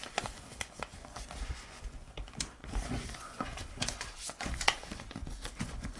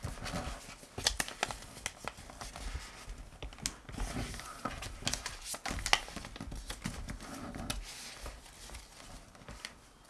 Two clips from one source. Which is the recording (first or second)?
second